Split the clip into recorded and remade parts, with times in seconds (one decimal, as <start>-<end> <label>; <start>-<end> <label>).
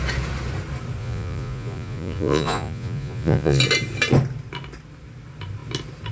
0.0-1.0 recorded; 1.0-3.6 remade; 3.6-6.1 recorded